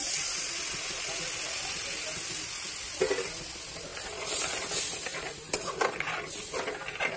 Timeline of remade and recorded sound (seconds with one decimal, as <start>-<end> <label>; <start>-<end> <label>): 0.0-7.2 recorded